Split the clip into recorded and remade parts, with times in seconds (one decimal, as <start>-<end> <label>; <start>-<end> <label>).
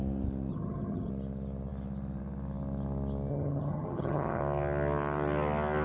0.0-0.5 recorded; 0.5-1.1 remade; 1.1-3.3 recorded; 3.3-4.4 remade; 4.4-5.8 recorded